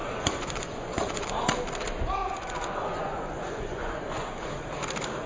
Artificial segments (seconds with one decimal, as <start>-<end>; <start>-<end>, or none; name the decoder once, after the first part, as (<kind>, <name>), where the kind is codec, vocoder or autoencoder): 0.0-1.3 (vocoder, Vocos); 2.2-4.5